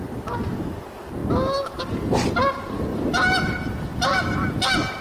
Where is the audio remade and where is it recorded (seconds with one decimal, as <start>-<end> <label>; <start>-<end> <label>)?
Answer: 0.0-2.9 recorded; 2.9-5.0 remade